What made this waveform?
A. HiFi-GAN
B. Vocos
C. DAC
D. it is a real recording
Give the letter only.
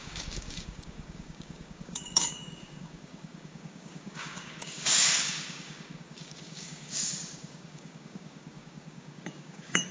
C